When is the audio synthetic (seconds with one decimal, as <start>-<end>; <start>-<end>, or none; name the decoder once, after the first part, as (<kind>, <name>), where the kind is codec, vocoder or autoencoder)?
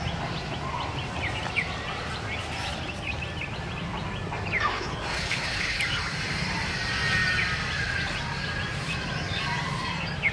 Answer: 4.7-5.8 (codec, HILCodec)